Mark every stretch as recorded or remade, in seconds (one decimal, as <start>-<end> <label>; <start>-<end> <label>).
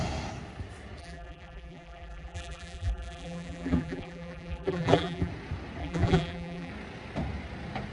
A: 0.0-1.0 recorded; 1.0-5.3 remade; 5.3-5.8 recorded; 5.8-6.7 remade; 6.7-7.9 recorded